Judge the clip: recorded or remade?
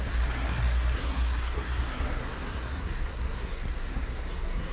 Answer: remade